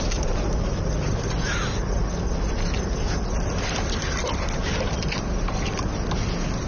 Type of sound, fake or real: real